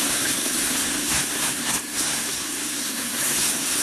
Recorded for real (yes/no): no